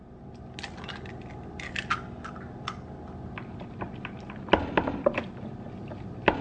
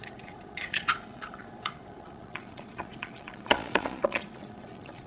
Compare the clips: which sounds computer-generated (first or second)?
second